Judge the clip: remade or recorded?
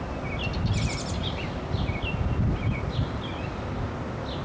recorded